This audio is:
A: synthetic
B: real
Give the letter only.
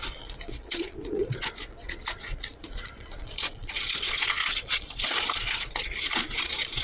A